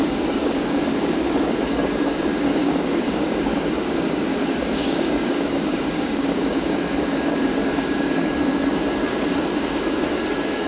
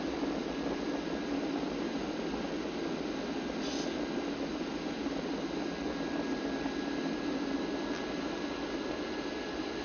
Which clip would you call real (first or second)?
second